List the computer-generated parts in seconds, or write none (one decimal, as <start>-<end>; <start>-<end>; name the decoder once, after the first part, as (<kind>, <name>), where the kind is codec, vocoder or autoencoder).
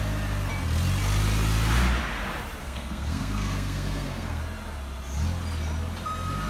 2.6-4.4 (codec, SNAC)